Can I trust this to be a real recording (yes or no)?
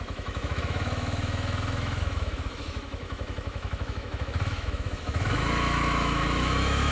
no